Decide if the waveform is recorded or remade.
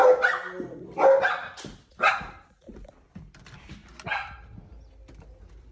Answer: recorded